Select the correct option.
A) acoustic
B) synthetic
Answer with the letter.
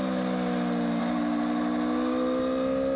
A